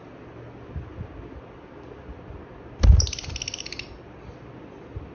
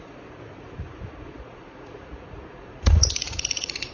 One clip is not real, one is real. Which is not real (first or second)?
second